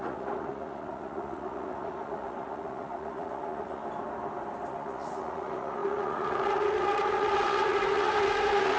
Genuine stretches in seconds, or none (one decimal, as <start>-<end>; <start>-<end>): 3.8-4.7